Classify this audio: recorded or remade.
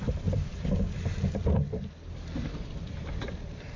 recorded